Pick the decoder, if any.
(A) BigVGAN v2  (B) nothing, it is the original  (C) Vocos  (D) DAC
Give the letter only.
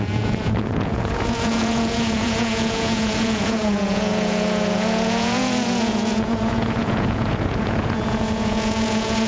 C